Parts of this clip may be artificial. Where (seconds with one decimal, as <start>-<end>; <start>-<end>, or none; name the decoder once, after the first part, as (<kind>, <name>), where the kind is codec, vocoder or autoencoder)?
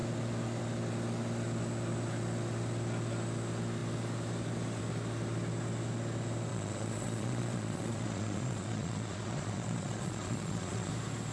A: 6.5-10.9 (vocoder, Vocos)